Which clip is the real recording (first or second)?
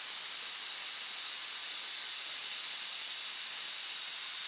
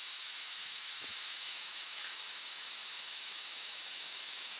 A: first